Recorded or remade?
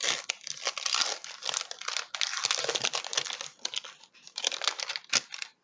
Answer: recorded